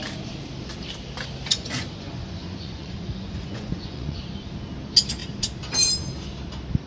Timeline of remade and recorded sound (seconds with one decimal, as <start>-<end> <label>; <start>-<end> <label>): 0.0-1.5 recorded; 1.5-4.2 remade; 4.2-6.9 recorded